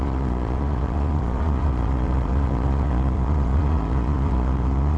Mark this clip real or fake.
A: fake